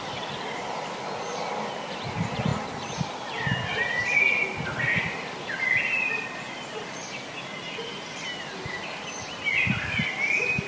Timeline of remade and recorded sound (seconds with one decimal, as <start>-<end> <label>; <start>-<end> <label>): 0.0-2.5 remade; 2.5-5.0 recorded; 5.0-10.7 remade